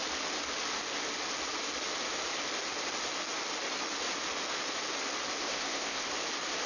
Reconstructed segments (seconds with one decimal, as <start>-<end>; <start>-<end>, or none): 5.4-6.1